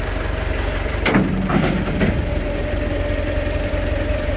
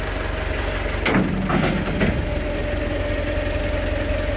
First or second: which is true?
second